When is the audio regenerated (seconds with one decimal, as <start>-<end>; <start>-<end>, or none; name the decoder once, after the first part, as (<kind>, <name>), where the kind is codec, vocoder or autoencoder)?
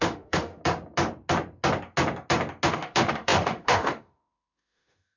0.0-0.6 (autoencoder, DAC-VAE); 2.7-5.2